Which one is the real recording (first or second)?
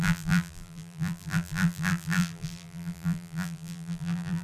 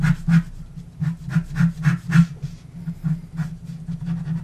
second